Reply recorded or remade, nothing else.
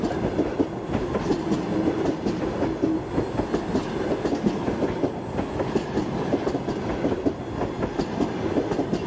recorded